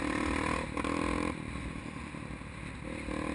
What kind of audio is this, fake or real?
real